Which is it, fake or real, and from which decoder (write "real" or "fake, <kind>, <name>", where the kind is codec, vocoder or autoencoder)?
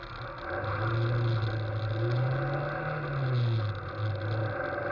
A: real